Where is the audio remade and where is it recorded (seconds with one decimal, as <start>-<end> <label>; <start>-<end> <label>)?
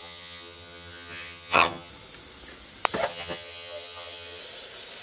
0.0-1.9 remade; 1.9-3.1 recorded; 3.1-4.4 remade; 4.4-5.0 recorded